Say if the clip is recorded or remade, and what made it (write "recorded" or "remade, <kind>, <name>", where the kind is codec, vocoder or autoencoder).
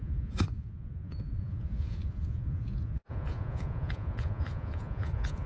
remade, vocoder, Vocos